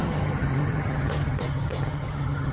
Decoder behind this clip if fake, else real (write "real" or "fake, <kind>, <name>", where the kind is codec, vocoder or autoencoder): fake, vocoder, HiFi-GAN